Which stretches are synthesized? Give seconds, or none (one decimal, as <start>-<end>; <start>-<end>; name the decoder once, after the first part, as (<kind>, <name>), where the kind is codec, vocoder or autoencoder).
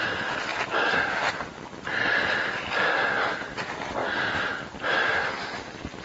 0.5-3.2 (vocoder, BigVGAN v2); 4.0-4.5; 5.0-6.0